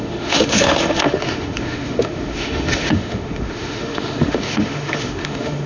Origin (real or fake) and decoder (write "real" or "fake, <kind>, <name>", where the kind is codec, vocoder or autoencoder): fake, autoencoder, DAC-VAE